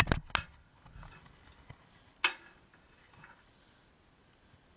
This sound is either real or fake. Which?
real